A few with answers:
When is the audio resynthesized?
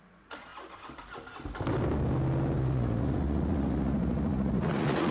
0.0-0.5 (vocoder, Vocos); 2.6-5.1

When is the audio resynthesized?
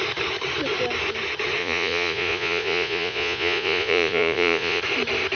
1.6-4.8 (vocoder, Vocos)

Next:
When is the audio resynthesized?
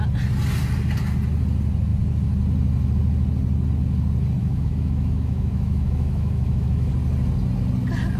4.4-6.9 (autoencoder, DAC-VAE)